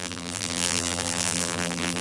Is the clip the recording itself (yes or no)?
no